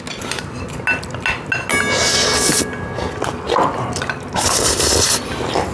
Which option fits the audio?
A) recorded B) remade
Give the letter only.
A